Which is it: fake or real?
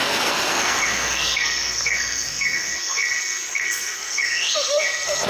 fake